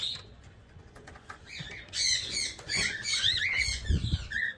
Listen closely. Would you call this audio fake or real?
fake